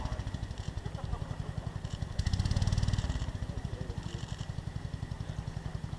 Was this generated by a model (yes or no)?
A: no